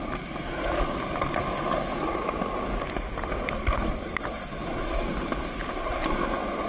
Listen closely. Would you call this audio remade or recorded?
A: recorded